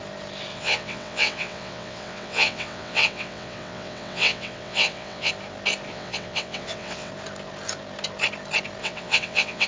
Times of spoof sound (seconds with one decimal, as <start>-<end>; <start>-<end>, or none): 0.5-5.3; 5.9-7.1; 8.8-9.7